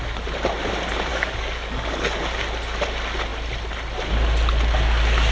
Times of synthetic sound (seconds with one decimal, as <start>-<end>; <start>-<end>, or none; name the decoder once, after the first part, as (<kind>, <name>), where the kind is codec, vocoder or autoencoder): 1.1-2.2 (codec, DAC)